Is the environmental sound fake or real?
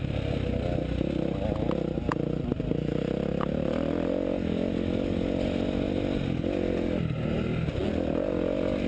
real